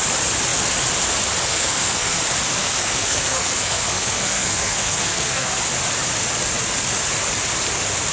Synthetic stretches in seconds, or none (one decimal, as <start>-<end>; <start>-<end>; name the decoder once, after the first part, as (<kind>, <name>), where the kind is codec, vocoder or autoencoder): 1.5-2.2 (codec, SNAC); 2.6-5.6